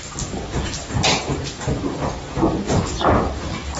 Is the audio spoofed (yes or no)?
no